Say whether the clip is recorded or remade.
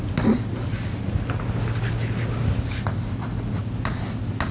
recorded